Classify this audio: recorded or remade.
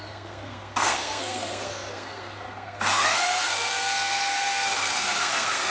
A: remade